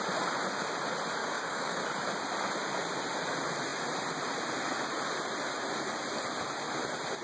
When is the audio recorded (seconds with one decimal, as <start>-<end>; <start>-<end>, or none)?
0.0-1.2; 1.8-7.2